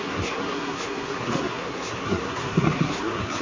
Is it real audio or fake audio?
fake